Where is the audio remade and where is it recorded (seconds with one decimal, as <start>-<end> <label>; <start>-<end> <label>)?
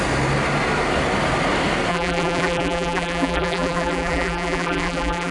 0.0-1.9 recorded; 1.9-5.3 remade